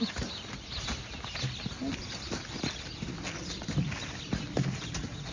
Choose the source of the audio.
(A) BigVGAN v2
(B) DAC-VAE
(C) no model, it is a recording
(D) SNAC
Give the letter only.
C